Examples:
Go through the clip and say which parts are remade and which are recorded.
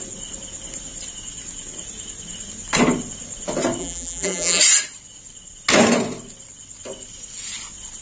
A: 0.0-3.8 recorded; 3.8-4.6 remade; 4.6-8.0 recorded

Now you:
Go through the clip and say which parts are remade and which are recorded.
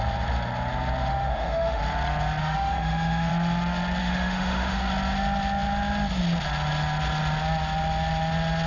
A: 0.0-1.1 recorded; 1.1-1.8 remade; 1.8-2.4 recorded; 2.4-3.3 remade; 3.3-4.0 recorded; 4.0-4.9 remade; 4.9-8.7 recorded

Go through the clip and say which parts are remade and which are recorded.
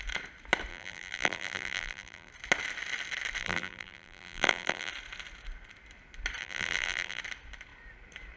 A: 0.0-0.7 recorded; 0.7-2.3 remade; 2.3-3.4 recorded; 3.4-4.9 remade; 4.9-6.4 recorded; 6.4-7.2 remade; 7.2-8.4 recorded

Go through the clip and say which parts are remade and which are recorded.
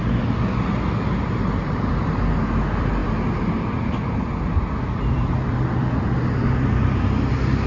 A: 0.0-7.7 recorded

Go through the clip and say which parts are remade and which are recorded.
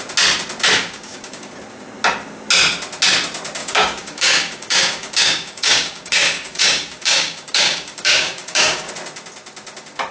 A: 0.0-0.8 recorded; 0.8-1.5 remade; 1.5-3.6 recorded; 3.6-8.9 remade; 8.9-10.1 recorded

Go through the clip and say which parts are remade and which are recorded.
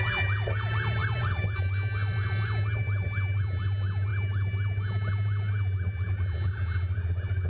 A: 0.0-7.5 recorded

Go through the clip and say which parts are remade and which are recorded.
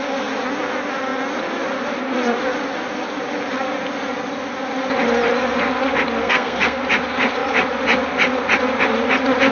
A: 0.0-6.2 recorded; 6.2-6.8 remade; 6.8-9.5 recorded